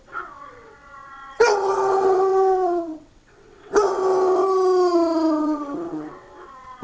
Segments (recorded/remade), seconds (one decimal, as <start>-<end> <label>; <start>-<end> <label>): 0.0-4.0 remade; 4.0-5.4 recorded; 5.4-6.8 remade

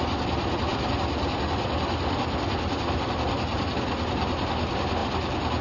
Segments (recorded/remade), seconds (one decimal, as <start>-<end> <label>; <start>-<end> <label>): 0.0-5.6 recorded

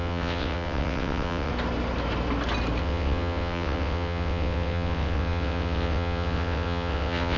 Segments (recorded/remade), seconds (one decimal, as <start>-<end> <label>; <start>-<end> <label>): 0.0-1.5 remade; 1.5-2.8 recorded; 2.8-7.4 remade